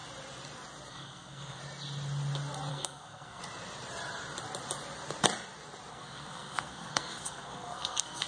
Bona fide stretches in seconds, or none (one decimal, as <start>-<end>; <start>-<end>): 0.0-0.9; 1.6-2.7; 3.4-5.9